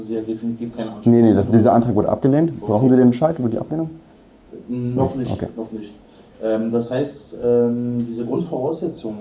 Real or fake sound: fake